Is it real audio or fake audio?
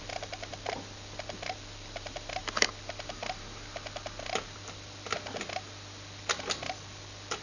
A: real